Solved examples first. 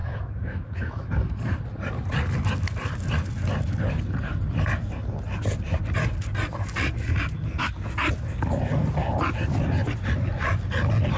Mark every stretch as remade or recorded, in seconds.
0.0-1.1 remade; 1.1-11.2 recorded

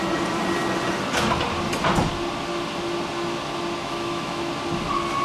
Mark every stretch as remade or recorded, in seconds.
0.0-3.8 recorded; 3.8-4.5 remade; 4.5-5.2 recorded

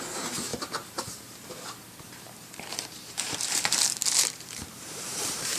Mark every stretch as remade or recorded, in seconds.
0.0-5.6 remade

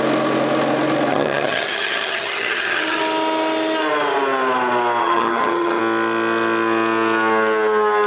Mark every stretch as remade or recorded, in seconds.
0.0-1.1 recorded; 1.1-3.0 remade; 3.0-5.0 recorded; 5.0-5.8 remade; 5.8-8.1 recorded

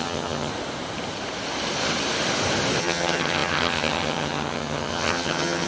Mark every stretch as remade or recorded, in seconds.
0.0-0.5 remade; 0.5-2.8 recorded; 2.8-5.7 remade

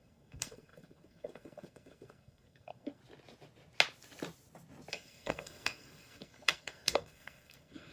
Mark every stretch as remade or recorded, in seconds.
0.0-3.0 remade; 3.0-4.9 recorded; 4.9-7.9 remade

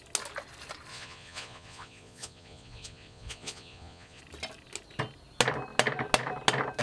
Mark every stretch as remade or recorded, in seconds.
0.0-0.9 recorded; 0.9-4.2 remade; 4.2-6.8 recorded

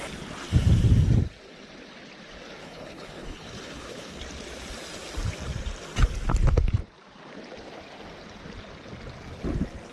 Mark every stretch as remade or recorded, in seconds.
0.0-2.6 recorded; 2.6-4.2 remade; 4.2-9.9 recorded